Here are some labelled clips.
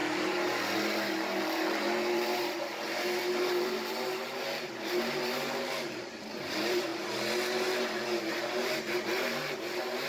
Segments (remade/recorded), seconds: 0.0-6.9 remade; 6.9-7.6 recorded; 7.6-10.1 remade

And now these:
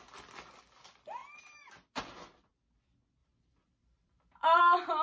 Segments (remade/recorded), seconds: 0.0-3.2 recorded; 3.2-4.6 remade; 4.6-5.0 recorded

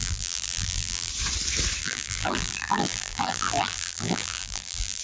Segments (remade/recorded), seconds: 0.0-1.1 remade; 1.1-1.8 recorded; 1.8-5.0 remade

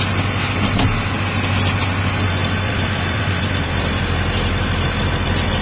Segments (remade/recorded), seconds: 0.0-2.4 recorded; 2.4-5.6 remade

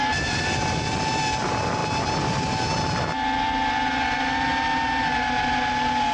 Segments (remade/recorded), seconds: 0.0-6.1 recorded

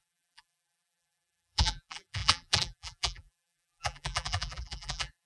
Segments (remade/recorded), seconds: 0.0-5.3 remade